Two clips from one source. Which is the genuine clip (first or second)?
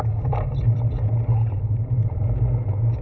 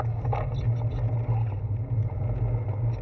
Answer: second